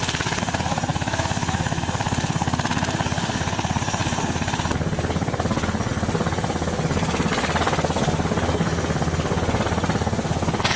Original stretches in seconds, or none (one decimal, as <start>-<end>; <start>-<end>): 0.0-0.9; 1.8-10.8